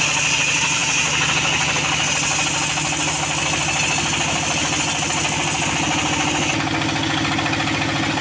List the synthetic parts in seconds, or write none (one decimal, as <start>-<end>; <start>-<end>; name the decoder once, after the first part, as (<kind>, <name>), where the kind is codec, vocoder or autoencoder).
none